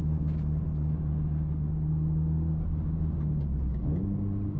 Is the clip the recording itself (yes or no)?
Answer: yes